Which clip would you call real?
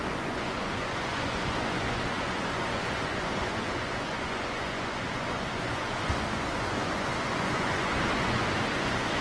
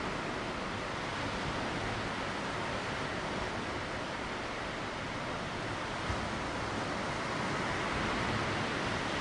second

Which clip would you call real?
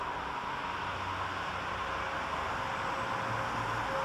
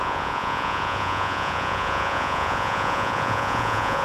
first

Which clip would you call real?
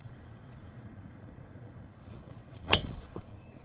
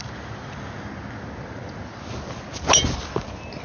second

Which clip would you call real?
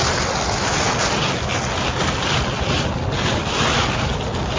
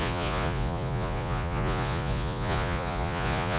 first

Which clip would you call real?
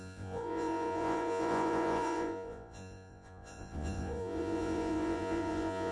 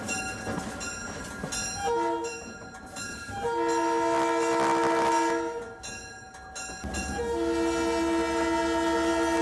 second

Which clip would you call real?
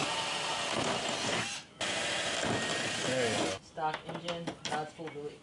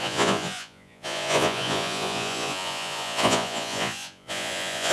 first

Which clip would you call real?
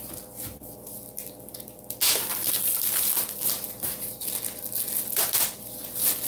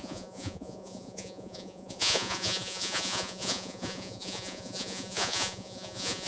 first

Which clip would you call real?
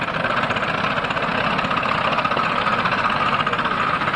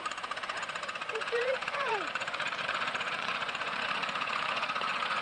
first